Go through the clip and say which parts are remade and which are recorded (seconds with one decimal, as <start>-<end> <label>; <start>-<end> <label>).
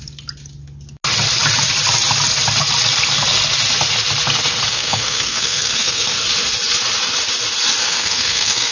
0.0-4.7 recorded; 4.7-6.2 remade; 6.2-7.8 recorded; 7.8-8.7 remade